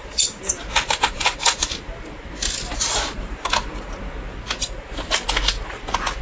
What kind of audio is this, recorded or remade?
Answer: recorded